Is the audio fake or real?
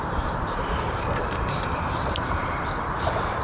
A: fake